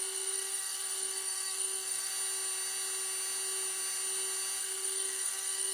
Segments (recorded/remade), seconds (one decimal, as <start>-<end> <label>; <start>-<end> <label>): 0.0-2.1 remade; 2.1-4.6 recorded; 4.6-5.7 remade

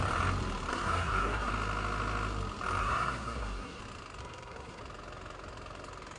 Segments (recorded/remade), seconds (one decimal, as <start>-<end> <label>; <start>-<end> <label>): 0.0-0.7 recorded; 0.7-1.5 remade; 1.5-2.8 recorded; 2.8-3.8 remade; 3.8-4.2 recorded; 4.2-4.8 remade; 4.8-6.2 recorded